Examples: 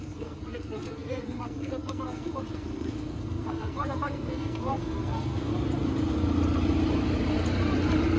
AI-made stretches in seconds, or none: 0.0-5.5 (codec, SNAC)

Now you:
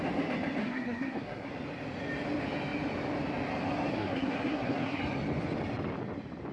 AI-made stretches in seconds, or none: 0.6-1.5 (codec, SNAC); 3.9-5.0

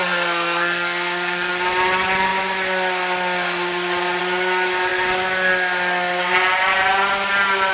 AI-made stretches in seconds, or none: 0.0-1.5 (codec, SNAC)

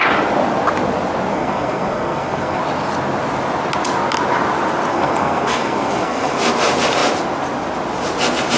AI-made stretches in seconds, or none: 1.3-2.6 (codec, SNAC); 4.9-6.4

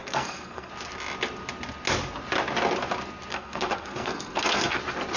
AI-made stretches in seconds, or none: 0.0-0.7 (codec, SNAC); 3.3-4.8

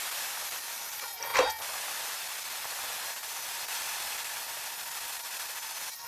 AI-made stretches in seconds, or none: none

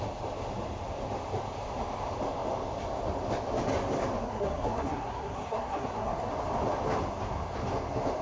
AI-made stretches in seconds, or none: 4.2-6.3 (codec, SNAC)

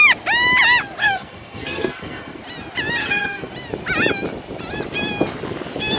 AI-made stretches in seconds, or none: 1.0-2.4 (codec, SNAC); 3.0-3.5